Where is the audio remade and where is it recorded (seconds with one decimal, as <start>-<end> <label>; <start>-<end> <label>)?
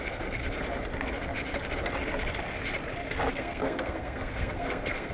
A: 0.0-0.4 remade; 0.4-3.3 recorded; 3.3-5.1 remade